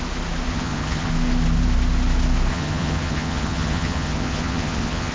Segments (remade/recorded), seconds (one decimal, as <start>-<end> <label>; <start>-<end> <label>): 0.0-0.5 recorded; 0.5-1.1 remade; 1.1-2.5 recorded; 2.5-5.1 remade

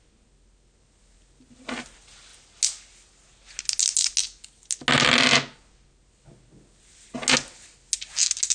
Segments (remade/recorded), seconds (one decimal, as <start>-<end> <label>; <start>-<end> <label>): 0.0-8.5 recorded

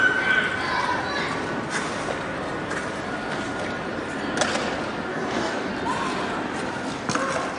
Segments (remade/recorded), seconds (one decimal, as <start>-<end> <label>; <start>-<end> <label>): 0.0-5.1 recorded; 5.1-5.7 remade; 5.7-7.6 recorded